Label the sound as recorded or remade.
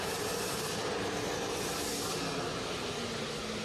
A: recorded